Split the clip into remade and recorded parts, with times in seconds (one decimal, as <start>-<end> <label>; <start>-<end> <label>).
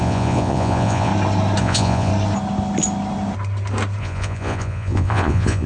0.0-1.1 remade; 1.1-1.6 recorded; 1.6-2.1 remade; 2.1-4.0 recorded; 4.0-5.7 remade